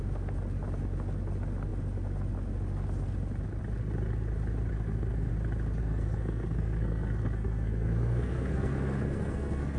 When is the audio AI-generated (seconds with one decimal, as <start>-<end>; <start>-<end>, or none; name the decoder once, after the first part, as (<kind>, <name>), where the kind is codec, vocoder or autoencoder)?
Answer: 4.7-5.3 (codec, SNAC); 5.8-9.8